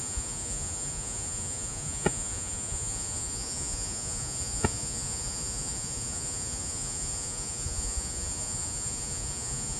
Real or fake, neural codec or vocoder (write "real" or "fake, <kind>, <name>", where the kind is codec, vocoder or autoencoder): fake, vocoder, Vocos